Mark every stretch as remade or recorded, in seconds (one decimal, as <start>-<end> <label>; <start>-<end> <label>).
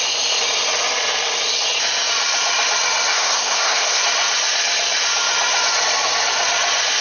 0.0-3.1 recorded; 3.1-4.0 remade; 4.0-7.0 recorded